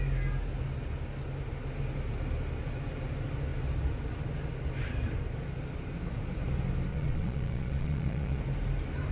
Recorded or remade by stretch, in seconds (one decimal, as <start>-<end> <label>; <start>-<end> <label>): 0.0-6.9 recorded; 6.9-8.4 remade; 8.4-9.1 recorded